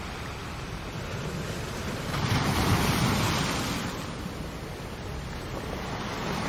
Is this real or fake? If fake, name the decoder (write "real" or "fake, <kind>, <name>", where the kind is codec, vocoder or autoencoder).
real